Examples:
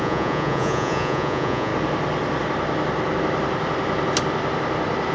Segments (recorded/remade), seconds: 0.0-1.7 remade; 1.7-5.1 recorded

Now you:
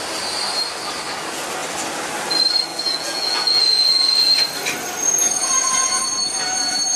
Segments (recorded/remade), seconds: 0.0-2.7 recorded; 2.7-4.4 remade; 4.4-5.0 recorded; 5.0-6.0 remade; 6.0-7.0 recorded

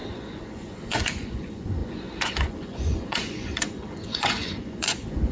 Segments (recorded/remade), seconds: 0.0-5.3 remade

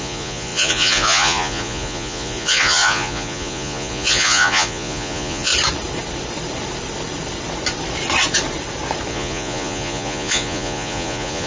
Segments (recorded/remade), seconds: 0.0-5.5 remade; 5.5-9.1 recorded; 9.1-11.5 remade

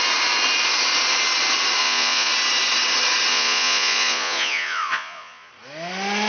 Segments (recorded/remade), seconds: 0.0-1.8 recorded; 1.8-2.3 remade; 2.3-3.3 recorded; 3.3-5.5 remade; 5.5-6.3 recorded

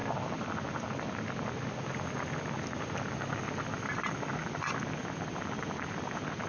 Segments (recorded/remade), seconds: 0.0-6.5 recorded

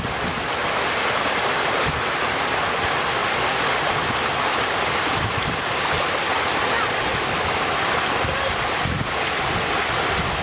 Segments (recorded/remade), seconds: 0.0-10.4 recorded

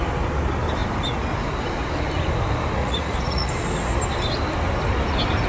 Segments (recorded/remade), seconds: 0.0-2.8 recorded; 2.8-3.5 remade; 3.5-5.5 recorded